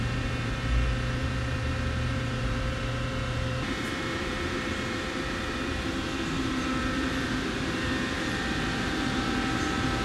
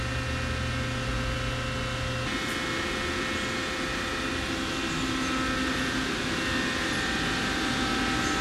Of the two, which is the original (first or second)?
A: second